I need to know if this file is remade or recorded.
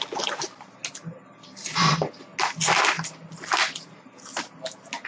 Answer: recorded